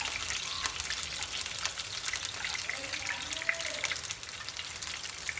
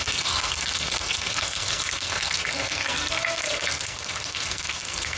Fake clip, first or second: second